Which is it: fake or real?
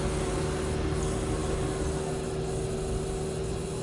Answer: real